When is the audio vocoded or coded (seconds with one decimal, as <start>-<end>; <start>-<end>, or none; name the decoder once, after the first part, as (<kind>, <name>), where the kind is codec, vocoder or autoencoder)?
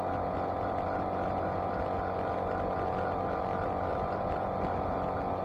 3.9-4.9 (vocoder, BigVGAN v2)